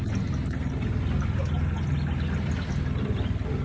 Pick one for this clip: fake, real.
real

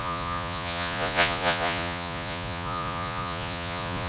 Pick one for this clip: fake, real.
fake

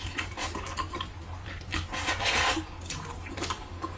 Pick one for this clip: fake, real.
real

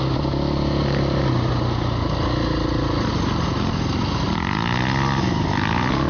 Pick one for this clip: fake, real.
real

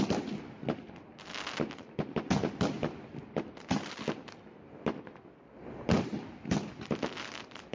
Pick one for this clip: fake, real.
real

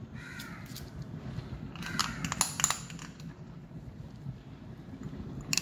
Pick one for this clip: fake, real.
real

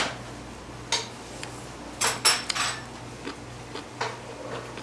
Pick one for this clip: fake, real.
real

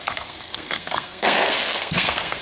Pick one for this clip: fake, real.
fake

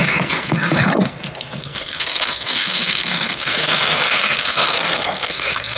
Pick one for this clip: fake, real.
fake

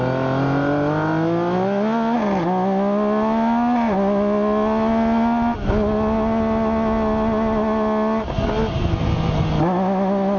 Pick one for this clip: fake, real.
real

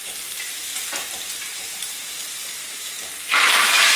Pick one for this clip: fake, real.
fake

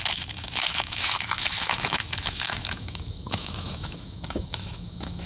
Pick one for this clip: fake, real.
fake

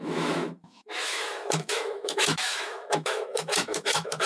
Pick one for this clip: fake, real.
fake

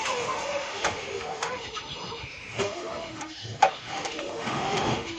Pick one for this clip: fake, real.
fake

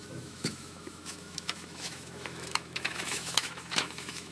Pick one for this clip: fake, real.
fake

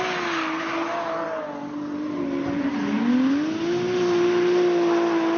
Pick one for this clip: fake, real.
real